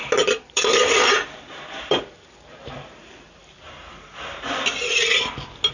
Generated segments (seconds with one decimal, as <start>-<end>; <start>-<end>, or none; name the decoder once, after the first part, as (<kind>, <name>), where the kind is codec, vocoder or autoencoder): 0.0-3.4 (vocoder, BigVGAN v2)